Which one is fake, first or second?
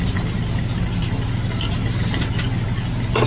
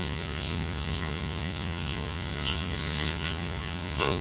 second